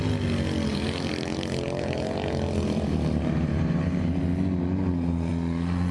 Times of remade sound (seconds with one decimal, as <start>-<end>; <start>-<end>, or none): 0.7-4.2

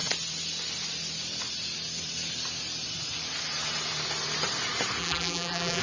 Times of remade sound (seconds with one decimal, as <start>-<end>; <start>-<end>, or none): 5.0-5.8